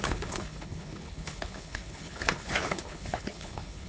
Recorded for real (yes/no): no